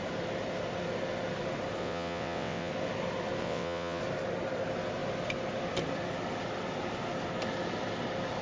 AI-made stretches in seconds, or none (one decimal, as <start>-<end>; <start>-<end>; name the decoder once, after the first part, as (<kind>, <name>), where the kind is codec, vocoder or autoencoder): 1.8-2.7 (vocoder, WaveNeXt); 3.4-4.0